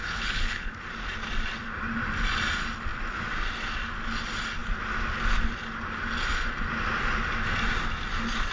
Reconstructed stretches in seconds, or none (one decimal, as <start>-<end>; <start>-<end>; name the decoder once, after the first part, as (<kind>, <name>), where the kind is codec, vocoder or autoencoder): 0.0-0.7 (codec, HILCodec)